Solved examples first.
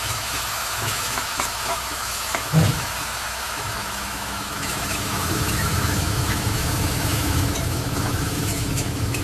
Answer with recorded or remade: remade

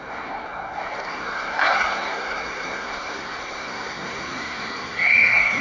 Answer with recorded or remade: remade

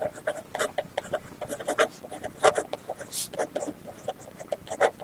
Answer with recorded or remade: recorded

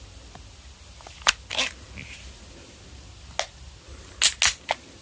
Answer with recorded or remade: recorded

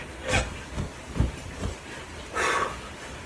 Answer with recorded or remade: recorded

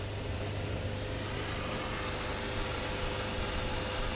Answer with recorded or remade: recorded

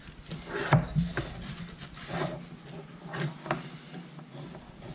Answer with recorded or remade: recorded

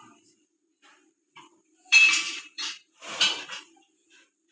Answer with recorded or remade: remade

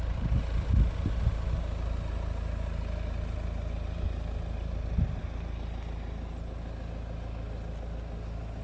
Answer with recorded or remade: recorded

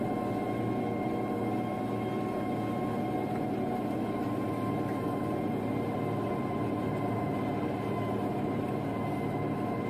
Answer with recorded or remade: recorded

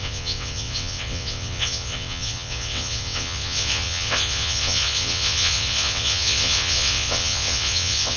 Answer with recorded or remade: remade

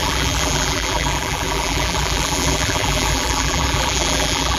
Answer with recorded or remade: remade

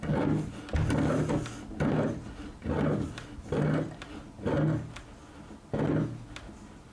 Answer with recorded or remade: recorded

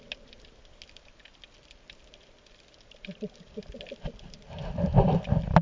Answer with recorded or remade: recorded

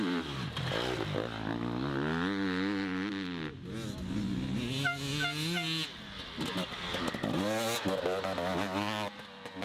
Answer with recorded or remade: recorded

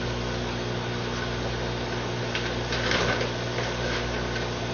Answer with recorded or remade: recorded